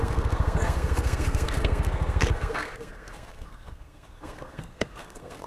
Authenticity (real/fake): fake